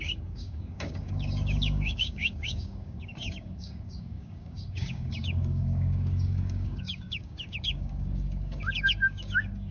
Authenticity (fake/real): fake